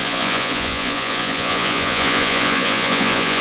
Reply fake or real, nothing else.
fake